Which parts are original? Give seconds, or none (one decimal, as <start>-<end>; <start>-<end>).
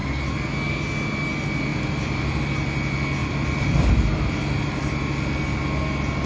0.0-1.7; 2.4-3.2; 4.9-6.3